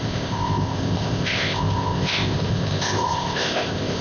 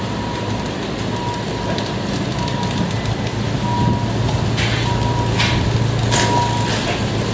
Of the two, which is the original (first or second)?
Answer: second